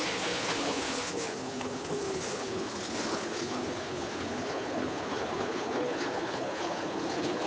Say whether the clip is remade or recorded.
remade